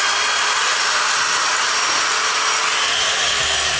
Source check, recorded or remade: recorded